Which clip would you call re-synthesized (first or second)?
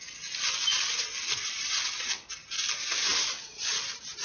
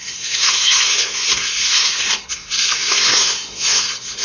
second